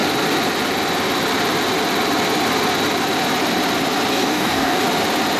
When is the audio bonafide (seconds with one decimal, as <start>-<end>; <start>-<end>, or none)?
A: 0.0-4.1; 4.8-5.4